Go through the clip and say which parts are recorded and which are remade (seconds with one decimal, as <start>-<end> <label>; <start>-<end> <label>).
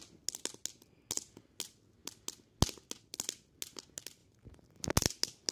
0.0-5.5 recorded